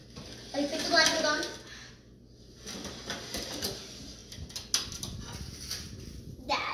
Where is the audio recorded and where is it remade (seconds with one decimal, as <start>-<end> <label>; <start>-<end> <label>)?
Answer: 0.0-6.7 recorded